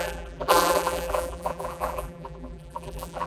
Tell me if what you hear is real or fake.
fake